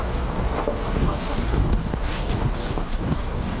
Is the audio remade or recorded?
remade